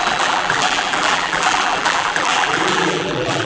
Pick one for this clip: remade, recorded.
remade